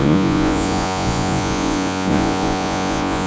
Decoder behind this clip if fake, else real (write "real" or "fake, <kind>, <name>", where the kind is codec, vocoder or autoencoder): fake, vocoder, Vocos